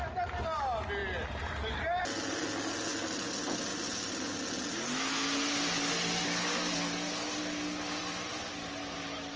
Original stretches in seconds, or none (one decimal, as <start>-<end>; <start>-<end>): 0.0-8.0; 8.5-9.4